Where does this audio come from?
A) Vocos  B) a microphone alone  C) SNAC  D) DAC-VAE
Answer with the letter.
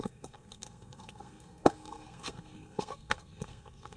C